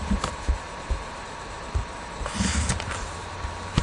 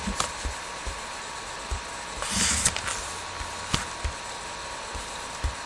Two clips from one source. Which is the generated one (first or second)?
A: first